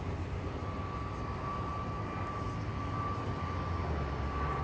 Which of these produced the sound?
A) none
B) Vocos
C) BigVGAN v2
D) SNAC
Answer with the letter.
A